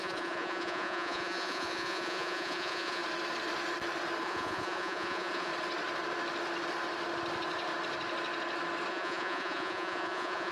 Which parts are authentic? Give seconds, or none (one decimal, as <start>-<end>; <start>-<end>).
3.0-4.2; 5.5-8.9